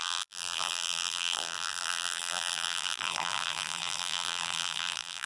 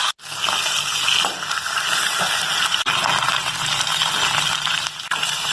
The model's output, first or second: first